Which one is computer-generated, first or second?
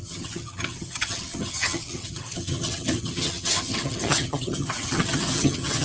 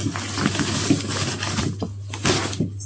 first